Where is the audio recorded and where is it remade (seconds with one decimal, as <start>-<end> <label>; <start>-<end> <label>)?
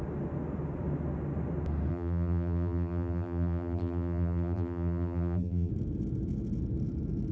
0.0-1.9 recorded; 1.9-5.7 remade; 5.7-7.3 recorded